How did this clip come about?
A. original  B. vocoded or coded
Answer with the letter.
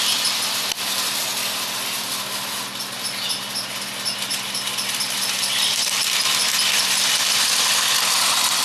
A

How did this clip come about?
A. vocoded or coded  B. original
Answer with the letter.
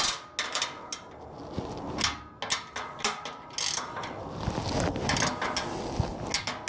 B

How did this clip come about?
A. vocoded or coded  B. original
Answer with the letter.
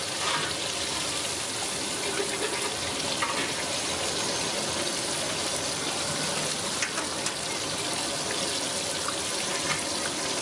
B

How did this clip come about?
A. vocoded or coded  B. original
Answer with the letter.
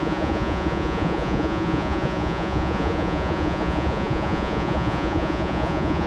A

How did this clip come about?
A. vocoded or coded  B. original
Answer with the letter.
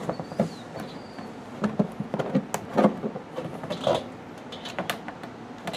B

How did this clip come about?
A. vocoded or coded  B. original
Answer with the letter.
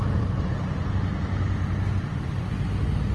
B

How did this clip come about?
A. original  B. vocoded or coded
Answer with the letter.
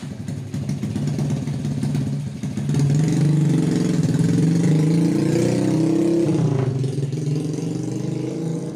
A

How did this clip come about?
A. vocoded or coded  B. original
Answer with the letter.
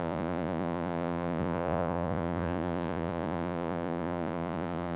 A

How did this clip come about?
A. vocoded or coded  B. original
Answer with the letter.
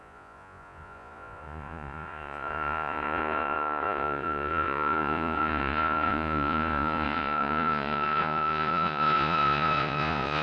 A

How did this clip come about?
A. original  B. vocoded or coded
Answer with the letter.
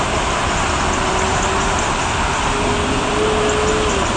A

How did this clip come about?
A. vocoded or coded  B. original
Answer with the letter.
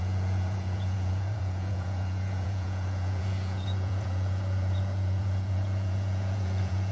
A